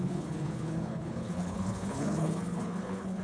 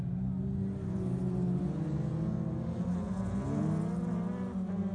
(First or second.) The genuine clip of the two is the second